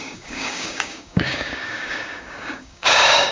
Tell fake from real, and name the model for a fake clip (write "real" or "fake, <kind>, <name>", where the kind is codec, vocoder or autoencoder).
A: fake, codec, DAC